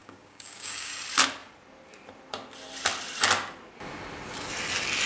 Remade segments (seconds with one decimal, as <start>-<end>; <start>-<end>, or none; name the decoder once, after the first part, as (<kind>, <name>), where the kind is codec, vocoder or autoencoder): 0.0-0.9 (codec, DAC)